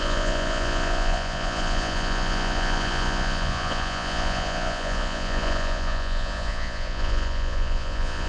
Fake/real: fake